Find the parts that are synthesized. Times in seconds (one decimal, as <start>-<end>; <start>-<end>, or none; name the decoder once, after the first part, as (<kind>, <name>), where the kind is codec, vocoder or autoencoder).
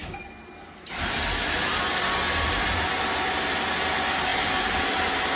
none